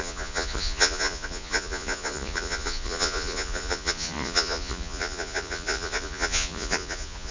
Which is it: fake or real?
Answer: fake